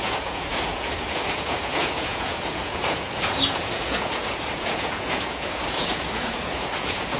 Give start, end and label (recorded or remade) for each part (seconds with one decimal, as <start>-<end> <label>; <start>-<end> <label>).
0.0-7.2 remade